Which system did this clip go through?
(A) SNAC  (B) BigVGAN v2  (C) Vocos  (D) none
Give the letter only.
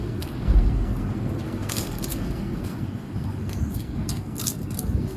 A